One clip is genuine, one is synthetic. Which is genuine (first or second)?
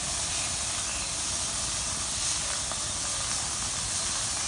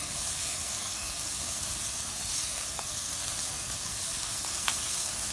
first